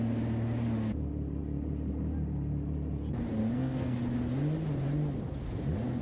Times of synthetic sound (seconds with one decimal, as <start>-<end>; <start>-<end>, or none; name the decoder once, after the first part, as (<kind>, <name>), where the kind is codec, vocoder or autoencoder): 3.4-4.0 (codec, SNAC)